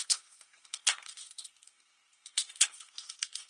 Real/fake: fake